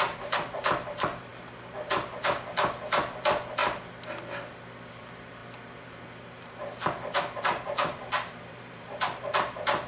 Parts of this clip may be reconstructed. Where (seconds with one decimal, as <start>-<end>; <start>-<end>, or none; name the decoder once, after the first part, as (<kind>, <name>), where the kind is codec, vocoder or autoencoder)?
0.0-1.3 (vocoder, BigVGAN v2); 3.0-3.6; 4.9-5.4; 7.4-9.9